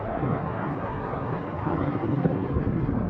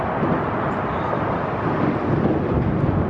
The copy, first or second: first